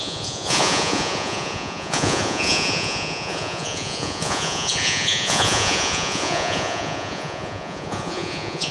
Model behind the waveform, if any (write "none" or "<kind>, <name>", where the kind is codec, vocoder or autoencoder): vocoder, Vocos